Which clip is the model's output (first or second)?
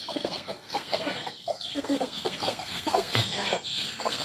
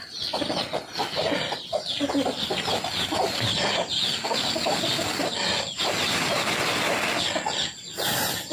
first